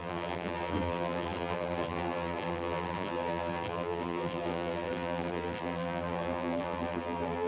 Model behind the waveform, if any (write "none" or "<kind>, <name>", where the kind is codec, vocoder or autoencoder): vocoder, BigVGAN v2